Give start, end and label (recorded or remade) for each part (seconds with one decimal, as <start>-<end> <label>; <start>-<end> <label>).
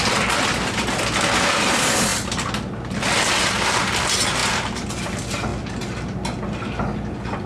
0.0-7.5 recorded